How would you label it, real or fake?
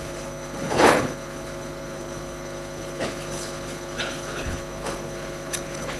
fake